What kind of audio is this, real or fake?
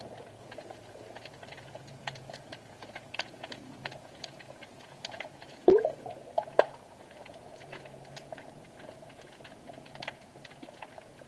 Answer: fake